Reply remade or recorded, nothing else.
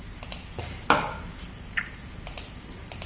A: remade